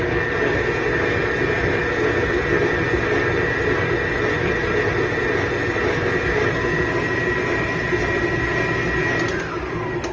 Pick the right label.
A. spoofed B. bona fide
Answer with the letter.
B